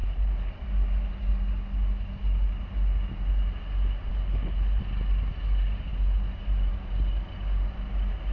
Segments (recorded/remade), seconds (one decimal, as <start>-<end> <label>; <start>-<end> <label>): 0.0-0.5 remade; 0.5-4.1 recorded; 4.1-4.8 remade; 4.8-8.3 recorded